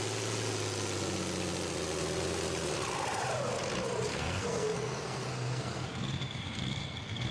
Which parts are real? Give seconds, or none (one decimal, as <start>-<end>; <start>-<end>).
0.0-4.1